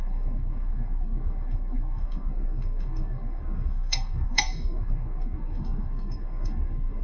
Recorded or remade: remade